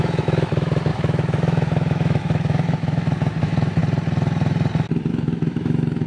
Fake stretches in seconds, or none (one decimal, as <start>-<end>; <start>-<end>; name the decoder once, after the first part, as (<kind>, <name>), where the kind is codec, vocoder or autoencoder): 0.0-3.8 (autoencoder, DAC-VAE); 5.1-6.1